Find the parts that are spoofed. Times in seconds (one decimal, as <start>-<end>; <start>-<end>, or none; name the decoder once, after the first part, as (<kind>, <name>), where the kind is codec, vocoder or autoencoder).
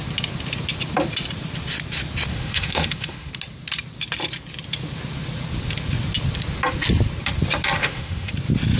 2.3-3.3 (autoencoder, DAC-VAE); 7.8-8.3